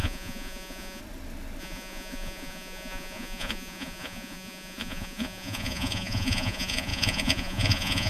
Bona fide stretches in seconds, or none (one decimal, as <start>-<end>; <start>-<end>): 1.0-1.6